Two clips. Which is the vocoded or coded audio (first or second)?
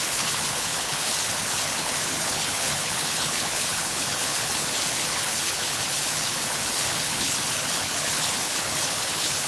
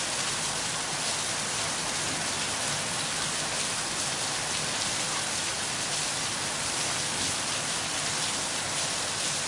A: first